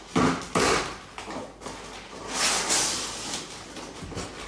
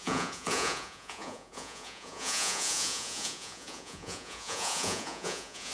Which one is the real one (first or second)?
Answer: first